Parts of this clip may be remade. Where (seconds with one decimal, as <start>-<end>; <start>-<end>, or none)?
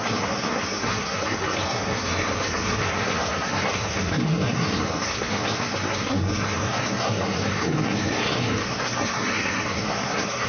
0.0-10.5